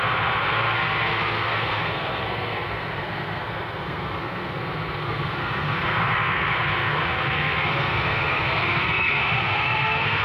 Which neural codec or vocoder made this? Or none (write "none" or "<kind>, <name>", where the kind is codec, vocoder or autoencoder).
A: codec, SNAC